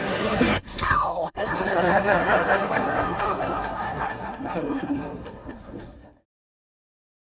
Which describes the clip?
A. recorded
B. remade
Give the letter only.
B